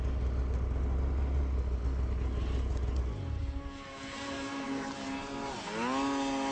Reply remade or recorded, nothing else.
recorded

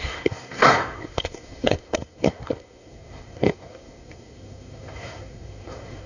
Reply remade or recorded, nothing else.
remade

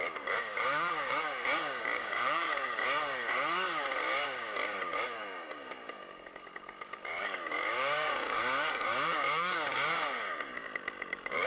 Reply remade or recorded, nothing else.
remade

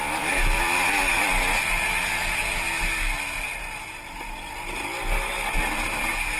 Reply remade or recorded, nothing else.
recorded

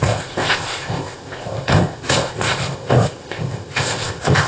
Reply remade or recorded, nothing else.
remade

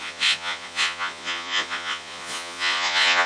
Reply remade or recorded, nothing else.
remade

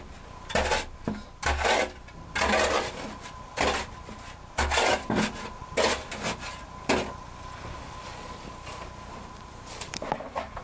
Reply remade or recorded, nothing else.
recorded